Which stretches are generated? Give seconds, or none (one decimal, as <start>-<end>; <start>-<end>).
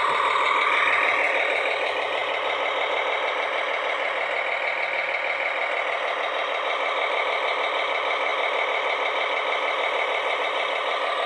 none